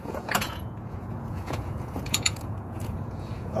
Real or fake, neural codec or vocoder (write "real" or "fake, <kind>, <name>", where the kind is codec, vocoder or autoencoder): fake, vocoder, Vocos